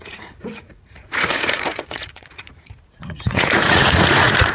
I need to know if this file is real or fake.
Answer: fake